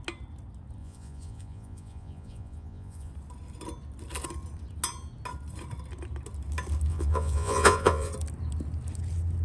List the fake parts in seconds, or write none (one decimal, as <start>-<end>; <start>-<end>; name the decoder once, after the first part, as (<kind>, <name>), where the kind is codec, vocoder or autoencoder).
0.8-3.1 (vocoder, Vocos); 6.9-8.1

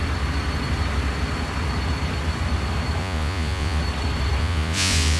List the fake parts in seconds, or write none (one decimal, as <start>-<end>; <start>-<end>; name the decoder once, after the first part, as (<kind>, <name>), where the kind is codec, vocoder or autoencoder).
3.0-3.8 (vocoder, Vocos); 4.4-5.2